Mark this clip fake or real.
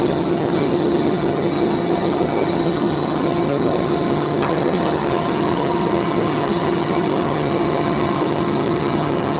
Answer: fake